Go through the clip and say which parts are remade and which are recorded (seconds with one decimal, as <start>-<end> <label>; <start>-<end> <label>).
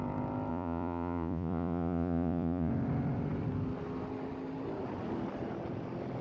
0.0-0.5 recorded; 0.5-2.7 remade; 2.7-6.2 recorded